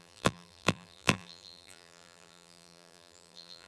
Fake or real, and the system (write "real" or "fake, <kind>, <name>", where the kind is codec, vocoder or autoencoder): fake, vocoder, BigVGAN v2